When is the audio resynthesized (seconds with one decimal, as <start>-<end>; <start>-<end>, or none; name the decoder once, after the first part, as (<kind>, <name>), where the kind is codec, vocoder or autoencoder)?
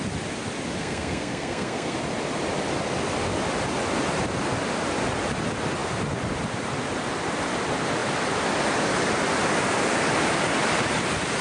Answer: 0.8-2.0 (codec, SNAC)